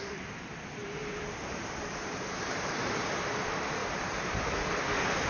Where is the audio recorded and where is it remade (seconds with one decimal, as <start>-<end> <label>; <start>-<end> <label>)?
0.0-0.8 recorded; 0.8-2.9 remade; 2.9-3.8 recorded; 3.8-4.7 remade; 4.7-5.3 recorded